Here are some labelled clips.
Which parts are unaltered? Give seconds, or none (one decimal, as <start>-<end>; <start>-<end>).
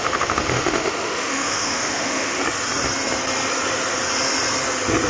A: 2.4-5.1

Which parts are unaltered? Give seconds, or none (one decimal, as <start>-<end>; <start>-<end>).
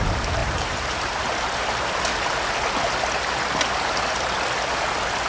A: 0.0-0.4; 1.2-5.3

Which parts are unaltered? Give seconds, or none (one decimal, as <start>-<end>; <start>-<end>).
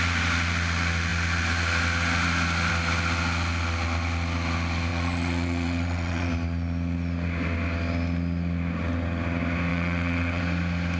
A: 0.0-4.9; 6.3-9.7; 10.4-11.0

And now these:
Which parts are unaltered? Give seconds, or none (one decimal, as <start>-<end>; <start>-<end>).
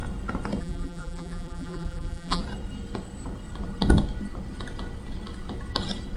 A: 0.0-0.6; 2.4-6.2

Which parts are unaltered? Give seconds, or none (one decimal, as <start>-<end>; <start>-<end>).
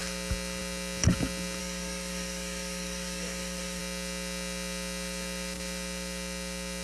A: 0.0-1.6; 3.8-6.8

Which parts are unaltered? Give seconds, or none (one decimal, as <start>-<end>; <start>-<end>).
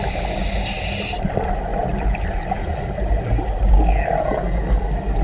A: 0.0-5.2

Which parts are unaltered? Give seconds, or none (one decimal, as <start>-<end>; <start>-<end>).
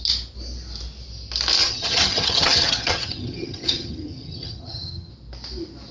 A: 0.0-1.6; 5.1-5.9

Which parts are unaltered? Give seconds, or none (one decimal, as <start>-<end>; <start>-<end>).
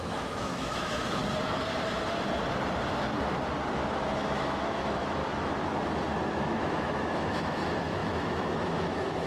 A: 1.2-3.7; 5.2-6.3